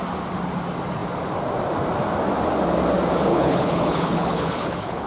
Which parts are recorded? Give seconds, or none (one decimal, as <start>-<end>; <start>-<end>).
0.0-3.3